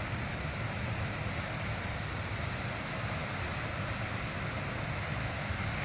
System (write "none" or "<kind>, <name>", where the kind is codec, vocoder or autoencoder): none